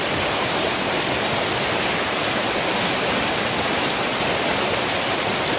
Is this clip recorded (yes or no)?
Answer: yes